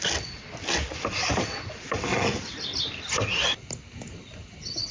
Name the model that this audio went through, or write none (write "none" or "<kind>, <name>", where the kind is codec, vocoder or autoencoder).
none